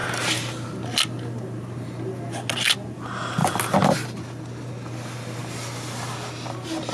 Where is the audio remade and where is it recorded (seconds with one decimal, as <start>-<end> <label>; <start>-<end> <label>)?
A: 0.0-6.9 recorded